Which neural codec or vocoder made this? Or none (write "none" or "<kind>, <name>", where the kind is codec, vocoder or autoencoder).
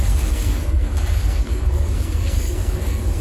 codec, SNAC